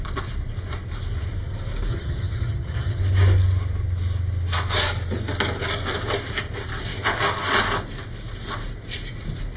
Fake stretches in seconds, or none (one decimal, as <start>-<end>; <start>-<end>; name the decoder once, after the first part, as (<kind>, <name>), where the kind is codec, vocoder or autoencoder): 1.9-3.0 (vocoder, HiFi-GAN)